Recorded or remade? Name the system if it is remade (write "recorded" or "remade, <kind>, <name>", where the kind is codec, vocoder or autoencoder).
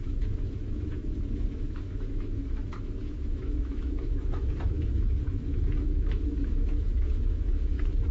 remade, autoencoder, DAC-VAE